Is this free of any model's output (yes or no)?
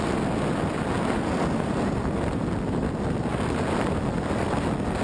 yes